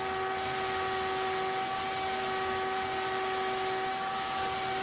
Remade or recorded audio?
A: recorded